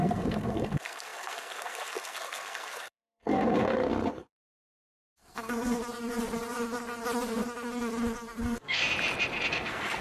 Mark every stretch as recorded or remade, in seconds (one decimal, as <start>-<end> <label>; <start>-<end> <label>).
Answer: 0.0-5.8 remade; 5.8-8.4 recorded; 8.4-8.8 remade; 8.8-9.5 recorded; 9.5-10.0 remade